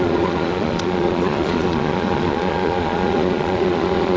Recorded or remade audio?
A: remade